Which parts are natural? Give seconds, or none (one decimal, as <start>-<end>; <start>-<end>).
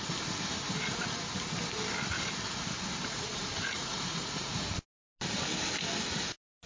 0.0-3.0; 4.7-6.7